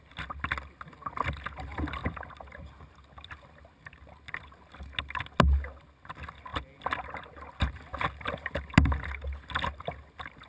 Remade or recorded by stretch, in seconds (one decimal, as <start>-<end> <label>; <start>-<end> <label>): 0.0-10.5 recorded